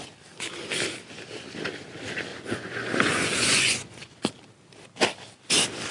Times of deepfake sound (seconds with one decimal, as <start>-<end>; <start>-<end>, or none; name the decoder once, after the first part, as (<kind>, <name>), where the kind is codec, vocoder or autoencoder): 2.3-4.2 (vocoder, Vocos)